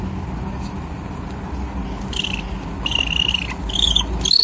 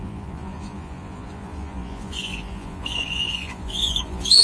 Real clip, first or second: first